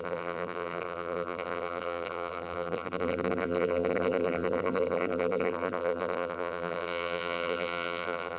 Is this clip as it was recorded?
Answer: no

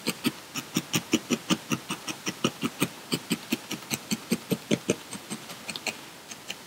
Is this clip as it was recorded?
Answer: yes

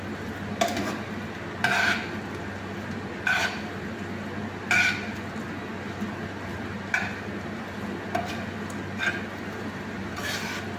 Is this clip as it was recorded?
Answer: yes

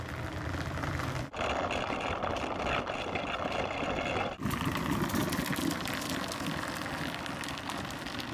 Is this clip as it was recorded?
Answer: yes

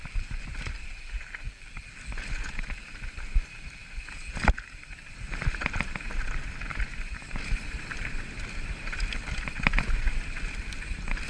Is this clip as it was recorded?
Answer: yes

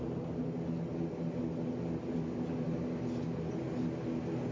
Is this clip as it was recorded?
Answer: yes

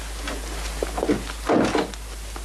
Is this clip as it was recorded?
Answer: yes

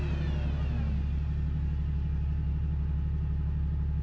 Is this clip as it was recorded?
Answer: yes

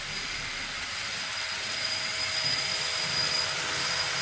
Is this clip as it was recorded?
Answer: yes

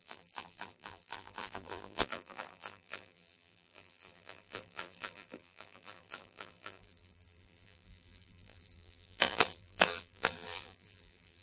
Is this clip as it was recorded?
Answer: no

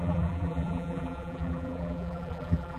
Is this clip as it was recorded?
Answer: no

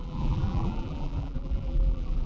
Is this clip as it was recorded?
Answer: no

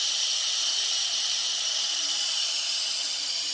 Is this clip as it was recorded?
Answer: no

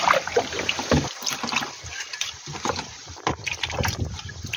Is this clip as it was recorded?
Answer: yes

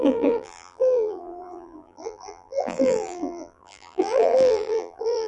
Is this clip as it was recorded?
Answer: no